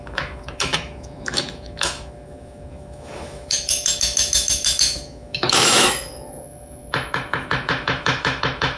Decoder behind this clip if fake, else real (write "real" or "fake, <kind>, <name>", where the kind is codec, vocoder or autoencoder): fake, autoencoder, DAC-VAE